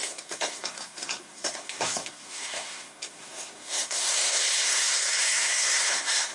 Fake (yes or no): yes